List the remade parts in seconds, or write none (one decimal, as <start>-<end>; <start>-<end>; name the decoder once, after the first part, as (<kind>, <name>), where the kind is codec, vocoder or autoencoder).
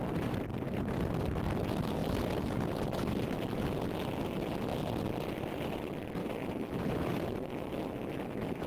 6.2-8.7 (autoencoder, DAC-VAE)